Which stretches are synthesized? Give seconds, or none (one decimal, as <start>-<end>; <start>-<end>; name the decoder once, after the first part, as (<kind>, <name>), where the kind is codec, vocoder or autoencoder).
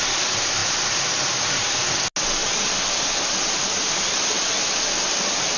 none